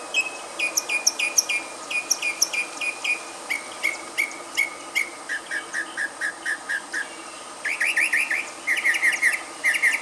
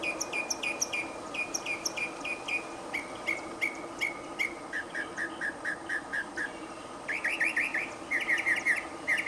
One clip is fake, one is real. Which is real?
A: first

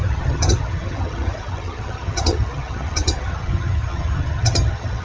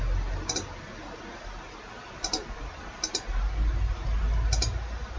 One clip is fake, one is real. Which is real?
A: second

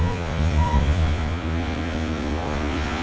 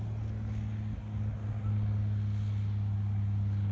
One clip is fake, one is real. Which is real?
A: second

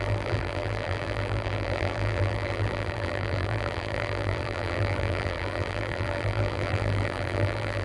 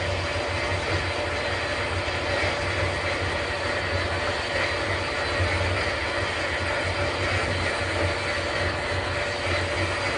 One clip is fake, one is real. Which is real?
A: second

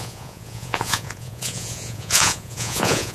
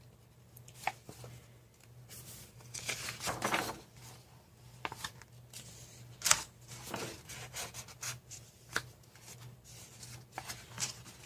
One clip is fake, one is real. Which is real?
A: second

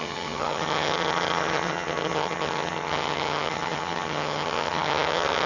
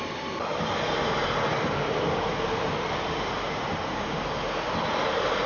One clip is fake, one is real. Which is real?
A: second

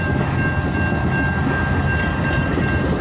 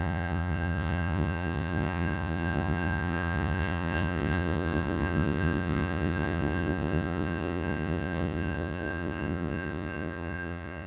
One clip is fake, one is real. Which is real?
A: first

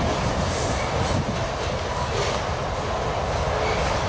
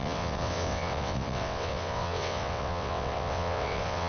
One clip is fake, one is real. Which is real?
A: first